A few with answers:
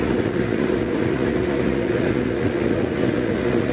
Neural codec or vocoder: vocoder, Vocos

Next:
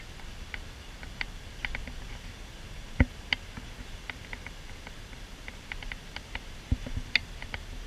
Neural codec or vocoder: none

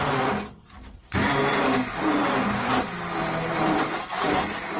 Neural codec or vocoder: none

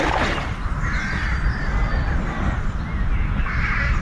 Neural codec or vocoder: none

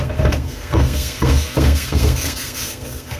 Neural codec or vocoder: codec, SNAC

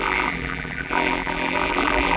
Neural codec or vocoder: vocoder, BigVGAN v2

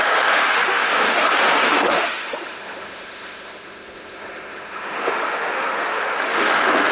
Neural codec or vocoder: autoencoder, DAC-VAE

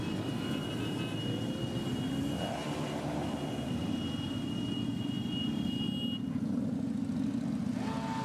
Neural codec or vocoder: none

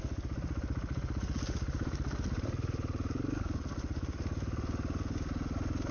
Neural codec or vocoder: none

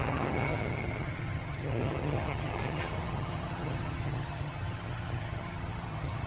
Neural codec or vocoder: vocoder, HiFi-GAN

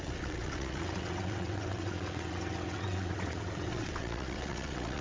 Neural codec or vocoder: vocoder, WaveNeXt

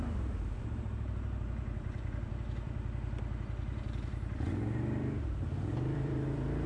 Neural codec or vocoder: vocoder, BigVGAN v2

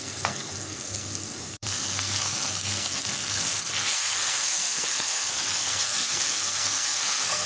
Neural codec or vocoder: codec, SNAC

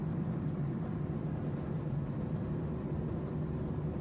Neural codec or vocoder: none